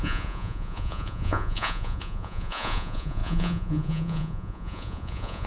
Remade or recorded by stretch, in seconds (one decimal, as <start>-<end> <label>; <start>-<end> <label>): 0.0-5.5 remade